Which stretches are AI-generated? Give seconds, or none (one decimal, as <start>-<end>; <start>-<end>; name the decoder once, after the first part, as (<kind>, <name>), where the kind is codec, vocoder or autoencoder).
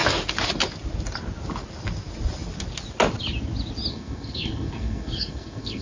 3.9-5.8 (codec, SNAC)